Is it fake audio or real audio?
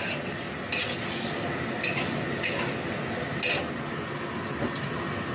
real